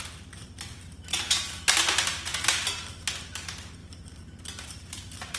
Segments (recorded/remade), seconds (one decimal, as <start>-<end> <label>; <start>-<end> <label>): 0.0-0.4 recorded; 0.4-1.4 remade; 1.4-3.8 recorded; 3.8-5.4 remade